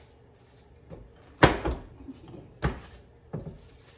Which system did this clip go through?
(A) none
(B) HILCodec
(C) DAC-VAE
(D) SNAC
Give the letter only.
A